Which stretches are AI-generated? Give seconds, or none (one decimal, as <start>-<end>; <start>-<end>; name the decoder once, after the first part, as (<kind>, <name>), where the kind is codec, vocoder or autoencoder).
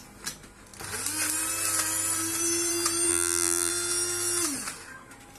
3.1-3.7 (vocoder, BigVGAN v2)